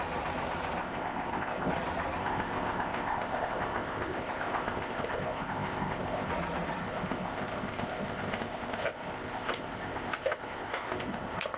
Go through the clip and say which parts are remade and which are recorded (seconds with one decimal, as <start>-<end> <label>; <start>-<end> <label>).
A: 0.0-0.8 recorded; 0.8-1.7 remade; 1.7-2.2 recorded; 2.2-6.3 remade; 6.3-6.8 recorded; 6.8-11.6 remade